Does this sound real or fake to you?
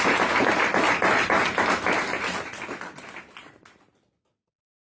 real